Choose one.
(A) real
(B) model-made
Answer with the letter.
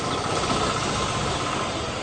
A